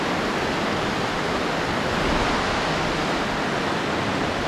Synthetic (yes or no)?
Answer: no